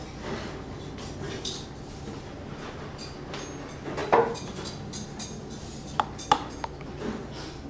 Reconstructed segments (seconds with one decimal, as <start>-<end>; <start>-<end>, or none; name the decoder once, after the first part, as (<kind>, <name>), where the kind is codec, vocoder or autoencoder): none